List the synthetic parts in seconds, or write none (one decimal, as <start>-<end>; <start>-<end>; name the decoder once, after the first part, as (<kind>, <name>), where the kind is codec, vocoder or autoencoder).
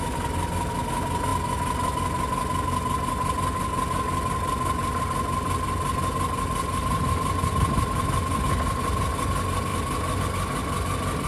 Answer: 9.7-10.2 (vocoder, BigVGAN v2)